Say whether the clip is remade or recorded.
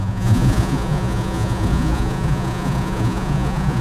remade